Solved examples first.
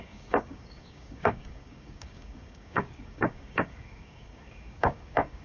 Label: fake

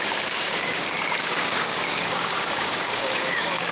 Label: fake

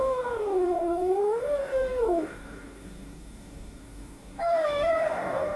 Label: fake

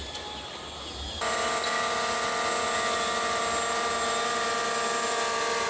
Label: real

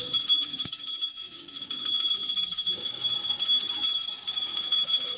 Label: fake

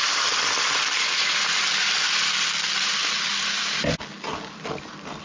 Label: real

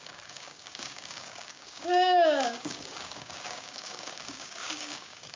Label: fake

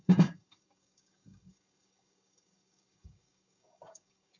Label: fake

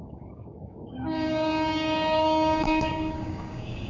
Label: fake